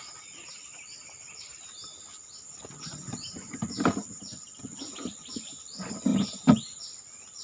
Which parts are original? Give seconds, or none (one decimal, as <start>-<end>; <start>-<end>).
0.0-6.1; 6.8-7.4